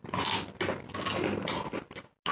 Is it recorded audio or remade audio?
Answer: recorded